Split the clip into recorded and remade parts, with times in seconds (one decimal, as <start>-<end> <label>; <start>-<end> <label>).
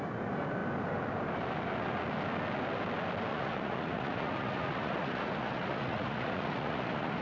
0.0-3.3 recorded; 3.3-7.2 remade